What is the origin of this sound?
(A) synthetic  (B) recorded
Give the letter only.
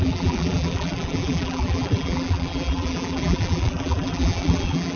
A